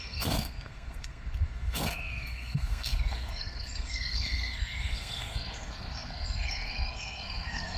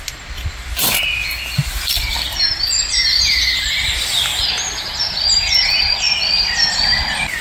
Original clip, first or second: second